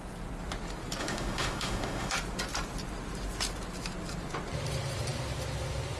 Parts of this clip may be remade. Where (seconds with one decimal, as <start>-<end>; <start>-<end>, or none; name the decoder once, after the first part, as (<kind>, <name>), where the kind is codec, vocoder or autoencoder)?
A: 1.0-2.1 (autoencoder, DAC-VAE)